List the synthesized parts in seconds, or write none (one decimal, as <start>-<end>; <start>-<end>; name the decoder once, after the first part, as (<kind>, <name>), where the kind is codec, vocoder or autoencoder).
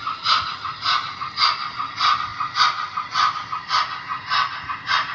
0.0-0.9 (vocoder, BigVGAN v2)